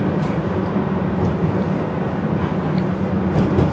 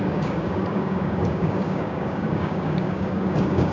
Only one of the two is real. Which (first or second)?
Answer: first